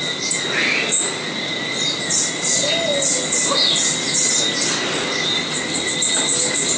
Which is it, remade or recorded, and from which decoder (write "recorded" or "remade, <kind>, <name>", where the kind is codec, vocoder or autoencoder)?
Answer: recorded